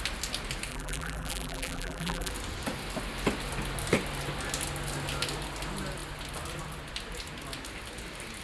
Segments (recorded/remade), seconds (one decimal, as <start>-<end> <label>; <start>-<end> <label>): 0.0-0.7 recorded; 0.7-2.3 remade; 2.3-8.4 recorded